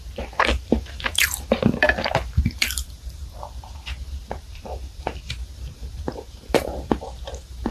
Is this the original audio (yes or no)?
no